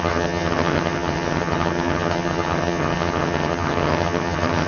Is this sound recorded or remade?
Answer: remade